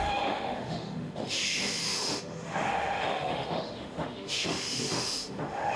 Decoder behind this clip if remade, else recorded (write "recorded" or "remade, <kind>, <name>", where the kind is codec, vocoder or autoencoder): remade, autoencoder, DAC-VAE